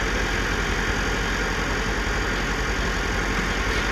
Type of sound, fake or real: real